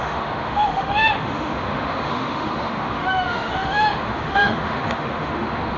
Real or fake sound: fake